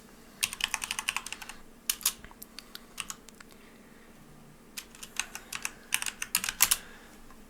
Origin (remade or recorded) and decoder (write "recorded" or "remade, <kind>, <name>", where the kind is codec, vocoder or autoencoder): recorded